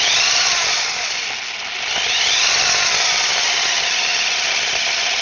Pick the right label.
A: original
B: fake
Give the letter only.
A